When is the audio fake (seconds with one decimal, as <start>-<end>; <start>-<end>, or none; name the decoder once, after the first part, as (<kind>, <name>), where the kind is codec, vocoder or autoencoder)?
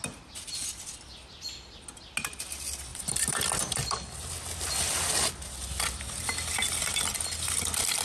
2.9-3.5 (vocoder, BigVGAN v2)